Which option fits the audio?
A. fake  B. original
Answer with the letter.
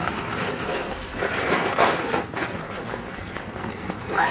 A